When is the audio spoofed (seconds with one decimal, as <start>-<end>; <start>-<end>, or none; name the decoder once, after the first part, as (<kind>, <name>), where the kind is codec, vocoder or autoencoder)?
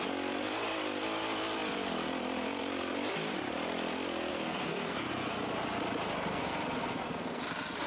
4.3-5.1 (codec, SNAC); 6.3-7.4